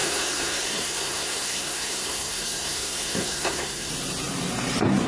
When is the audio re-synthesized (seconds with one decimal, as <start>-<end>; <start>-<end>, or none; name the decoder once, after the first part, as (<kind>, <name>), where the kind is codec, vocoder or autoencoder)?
0.0-3.9 (codec, SNAC)